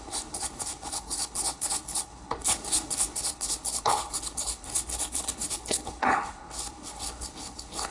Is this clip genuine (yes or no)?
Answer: no